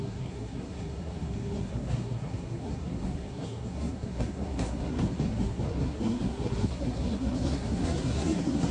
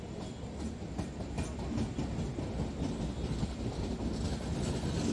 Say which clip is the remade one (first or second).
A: first